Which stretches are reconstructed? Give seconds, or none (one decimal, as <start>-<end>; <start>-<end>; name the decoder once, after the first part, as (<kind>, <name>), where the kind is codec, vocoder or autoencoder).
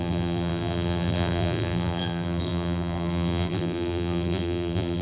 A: 0.0-5.0 (vocoder, BigVGAN v2)